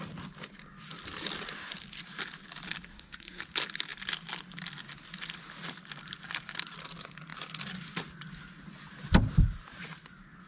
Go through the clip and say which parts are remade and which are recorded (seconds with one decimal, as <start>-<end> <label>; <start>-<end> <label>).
0.0-2.9 recorded; 2.9-3.4 remade; 3.4-10.5 recorded